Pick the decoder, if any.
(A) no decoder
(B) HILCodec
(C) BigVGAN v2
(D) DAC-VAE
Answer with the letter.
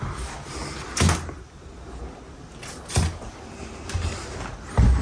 A